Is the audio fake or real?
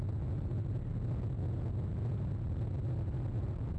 real